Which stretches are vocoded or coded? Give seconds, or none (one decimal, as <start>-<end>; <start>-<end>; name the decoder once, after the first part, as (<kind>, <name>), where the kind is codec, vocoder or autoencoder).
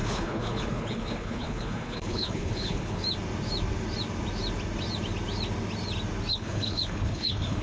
0.0-3.0 (codec, HILCodec); 6.3-7.6